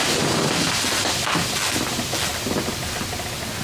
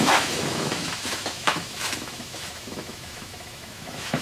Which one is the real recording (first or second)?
first